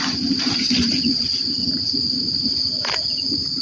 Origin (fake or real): real